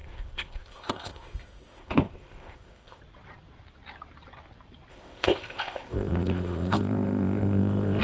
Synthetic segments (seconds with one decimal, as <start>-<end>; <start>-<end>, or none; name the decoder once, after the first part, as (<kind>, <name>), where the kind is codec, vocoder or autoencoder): 0.0-3.0 (codec, ZipCodec); 4.9-8.0